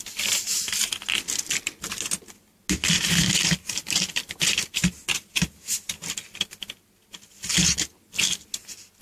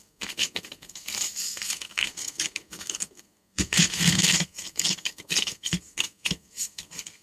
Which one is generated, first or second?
second